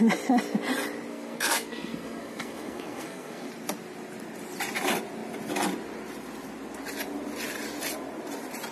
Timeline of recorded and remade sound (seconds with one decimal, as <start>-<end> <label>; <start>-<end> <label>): 0.0-1.1 recorded; 1.1-3.5 remade; 3.5-8.7 recorded